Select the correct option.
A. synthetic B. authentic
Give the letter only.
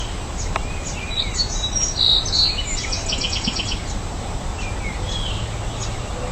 B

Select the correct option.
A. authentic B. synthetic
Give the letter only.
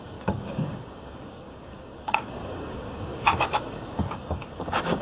B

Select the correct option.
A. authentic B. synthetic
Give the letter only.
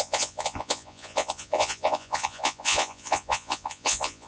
B